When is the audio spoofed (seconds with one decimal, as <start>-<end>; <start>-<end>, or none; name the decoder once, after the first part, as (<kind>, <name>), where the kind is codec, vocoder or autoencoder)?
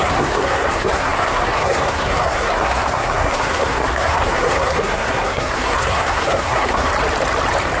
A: 0.0-6.9 (codec, SNAC)